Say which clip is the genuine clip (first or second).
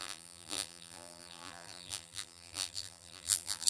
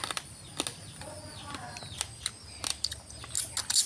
second